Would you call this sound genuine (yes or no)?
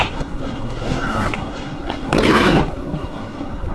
no